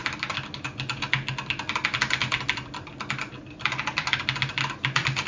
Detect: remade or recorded recorded